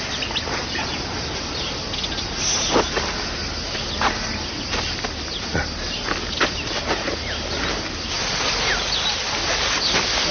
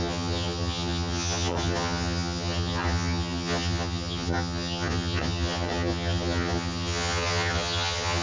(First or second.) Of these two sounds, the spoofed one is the second